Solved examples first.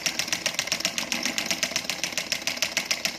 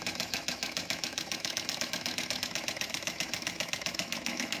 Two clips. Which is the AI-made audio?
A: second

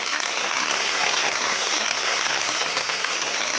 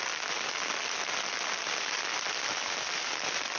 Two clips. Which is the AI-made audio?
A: first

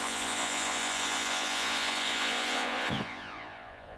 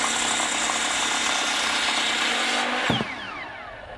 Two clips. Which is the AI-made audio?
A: first